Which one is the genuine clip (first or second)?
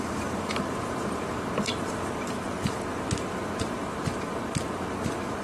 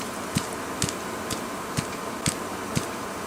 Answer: second